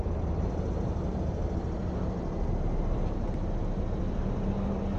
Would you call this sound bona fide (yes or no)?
yes